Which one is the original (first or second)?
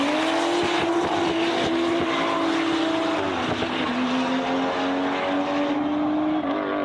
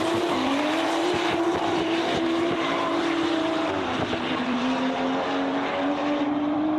first